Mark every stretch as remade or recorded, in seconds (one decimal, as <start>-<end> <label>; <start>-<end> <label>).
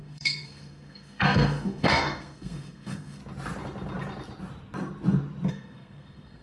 0.0-3.2 remade; 3.2-5.5 recorded; 5.5-6.4 remade